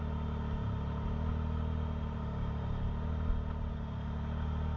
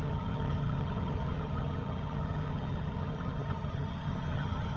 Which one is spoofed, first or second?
second